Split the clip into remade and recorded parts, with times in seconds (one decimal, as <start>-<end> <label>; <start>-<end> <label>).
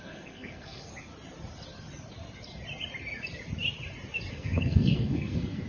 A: 0.0-0.9 remade; 0.9-4.3 recorded; 4.3-5.7 remade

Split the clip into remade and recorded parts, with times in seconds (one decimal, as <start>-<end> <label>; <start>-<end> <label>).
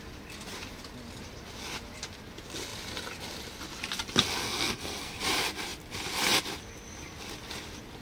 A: 0.0-4.4 recorded; 4.4-5.2 remade; 5.2-8.0 recorded